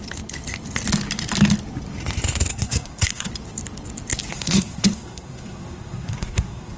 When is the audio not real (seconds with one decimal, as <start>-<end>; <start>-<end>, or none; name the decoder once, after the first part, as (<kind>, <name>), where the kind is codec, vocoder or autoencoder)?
2.5-3.3 (codec, SNAC); 4.3-6.8